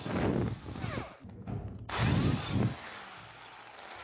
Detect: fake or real real